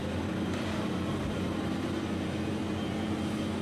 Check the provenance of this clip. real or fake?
real